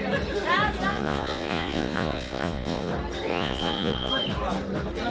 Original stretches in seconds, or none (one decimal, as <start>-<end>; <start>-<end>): 0.0-0.9; 2.9-3.3; 4.1-5.1